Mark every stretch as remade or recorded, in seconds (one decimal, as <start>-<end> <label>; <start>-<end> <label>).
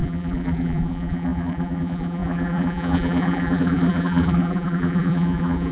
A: 0.0-5.7 remade